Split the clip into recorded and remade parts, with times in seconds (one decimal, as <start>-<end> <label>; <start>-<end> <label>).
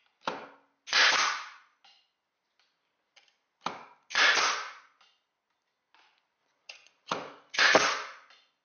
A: 0.0-6.4 recorded; 6.4-7.6 remade; 7.6-8.6 recorded